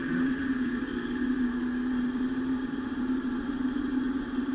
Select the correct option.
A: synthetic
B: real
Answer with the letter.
A